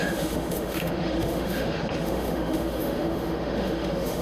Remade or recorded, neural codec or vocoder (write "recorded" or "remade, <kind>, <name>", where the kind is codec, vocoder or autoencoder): remade, autoencoder, DAC-VAE